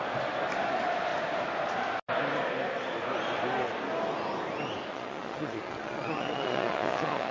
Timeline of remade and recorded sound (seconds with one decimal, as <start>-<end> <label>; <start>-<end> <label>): 0.0-4.9 recorded; 4.9-7.3 remade